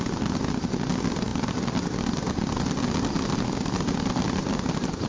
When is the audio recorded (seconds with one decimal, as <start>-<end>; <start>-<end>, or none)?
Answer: 0.0-5.1